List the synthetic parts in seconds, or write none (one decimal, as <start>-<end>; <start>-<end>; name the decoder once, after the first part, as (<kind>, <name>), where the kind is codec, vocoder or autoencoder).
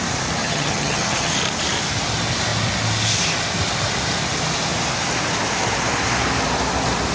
0.4-1.3 (vocoder, HiFi-GAN)